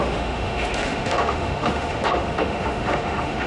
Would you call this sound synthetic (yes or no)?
yes